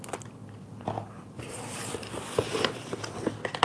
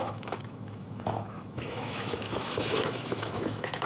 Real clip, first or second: first